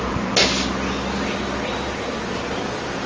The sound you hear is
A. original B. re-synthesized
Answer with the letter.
A